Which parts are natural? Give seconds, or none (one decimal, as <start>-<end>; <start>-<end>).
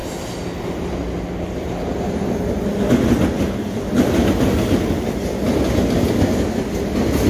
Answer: 0.0-7.3